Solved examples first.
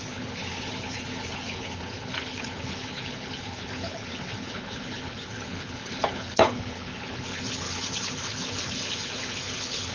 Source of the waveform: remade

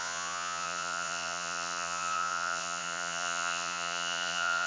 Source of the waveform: remade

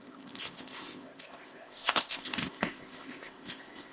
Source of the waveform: remade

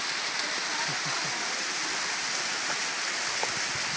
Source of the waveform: recorded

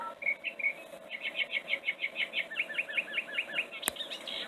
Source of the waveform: recorded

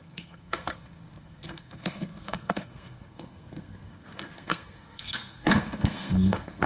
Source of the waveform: remade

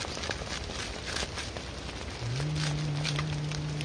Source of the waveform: recorded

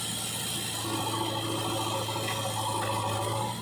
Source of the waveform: recorded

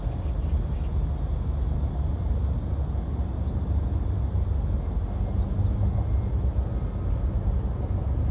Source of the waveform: recorded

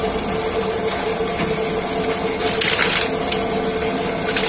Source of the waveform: recorded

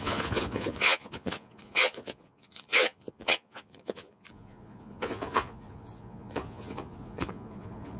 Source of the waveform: remade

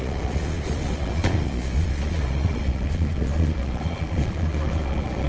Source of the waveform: remade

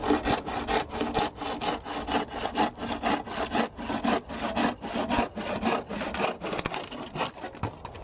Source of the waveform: recorded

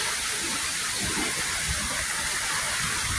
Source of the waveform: recorded